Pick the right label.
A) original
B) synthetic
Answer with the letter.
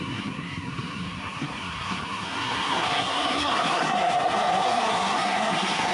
B